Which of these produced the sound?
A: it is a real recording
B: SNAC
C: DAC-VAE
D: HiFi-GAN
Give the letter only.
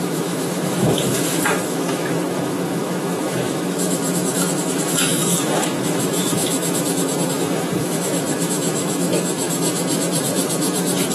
C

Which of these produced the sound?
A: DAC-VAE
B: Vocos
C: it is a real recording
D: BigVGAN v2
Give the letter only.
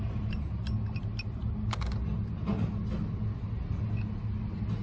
C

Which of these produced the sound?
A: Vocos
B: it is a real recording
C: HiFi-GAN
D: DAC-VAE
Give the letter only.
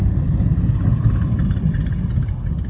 B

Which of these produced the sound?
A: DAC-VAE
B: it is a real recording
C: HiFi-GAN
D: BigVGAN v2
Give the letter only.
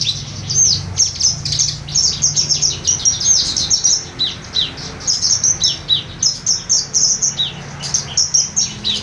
B